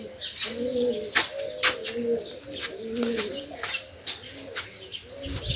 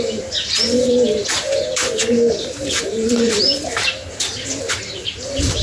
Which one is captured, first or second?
first